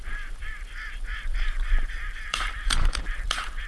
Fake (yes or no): yes